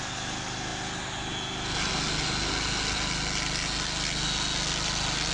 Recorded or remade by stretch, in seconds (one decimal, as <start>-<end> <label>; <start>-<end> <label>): 0.0-5.3 recorded